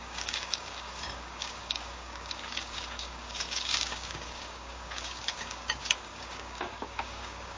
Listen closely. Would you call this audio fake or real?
fake